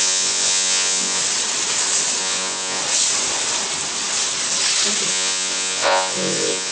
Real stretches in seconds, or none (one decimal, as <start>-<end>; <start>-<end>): 1.2-2.2; 2.8-5.1